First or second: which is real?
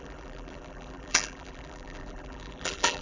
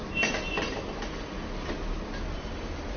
second